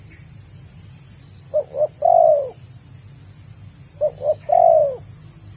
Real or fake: real